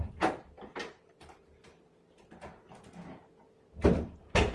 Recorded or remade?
recorded